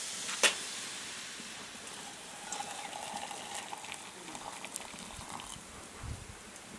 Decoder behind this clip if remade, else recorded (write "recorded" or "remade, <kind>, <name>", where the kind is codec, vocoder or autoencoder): recorded